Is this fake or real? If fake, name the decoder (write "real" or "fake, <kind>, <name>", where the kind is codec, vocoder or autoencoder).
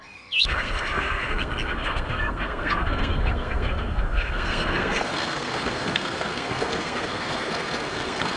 fake, codec, SNAC